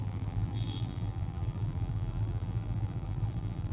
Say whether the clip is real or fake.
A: fake